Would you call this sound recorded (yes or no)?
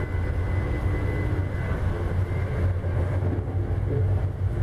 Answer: yes